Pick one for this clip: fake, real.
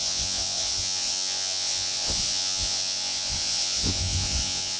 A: fake